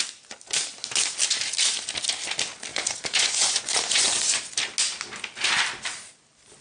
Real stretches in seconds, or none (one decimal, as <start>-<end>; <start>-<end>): 0.0-2.7; 4.4-6.6